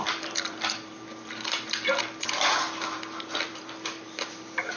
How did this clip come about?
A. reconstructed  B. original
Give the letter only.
A